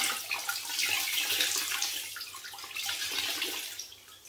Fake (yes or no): no